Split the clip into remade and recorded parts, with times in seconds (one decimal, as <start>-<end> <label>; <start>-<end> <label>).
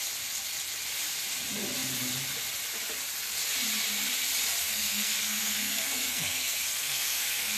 0.0-4.6 recorded; 4.6-7.6 remade